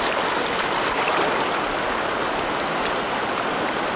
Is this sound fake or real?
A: real